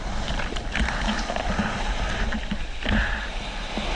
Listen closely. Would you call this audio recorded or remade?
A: recorded